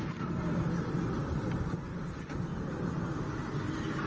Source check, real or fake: real